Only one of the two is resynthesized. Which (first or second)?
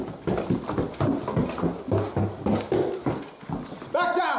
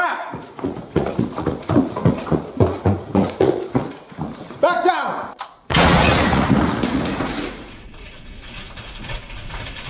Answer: second